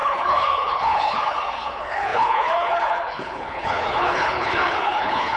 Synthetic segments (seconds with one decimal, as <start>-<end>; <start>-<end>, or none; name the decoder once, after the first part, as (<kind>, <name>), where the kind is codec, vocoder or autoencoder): 0.0-5.4 (codec, HILCodec)